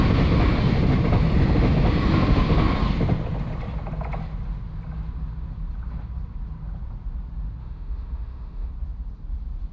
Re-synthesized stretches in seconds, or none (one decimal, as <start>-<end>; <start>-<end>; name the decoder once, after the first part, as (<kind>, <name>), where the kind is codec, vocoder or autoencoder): 7.6-8.7 (autoencoder, DAC-VAE)